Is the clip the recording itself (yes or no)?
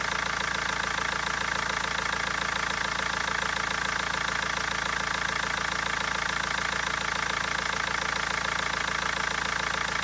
yes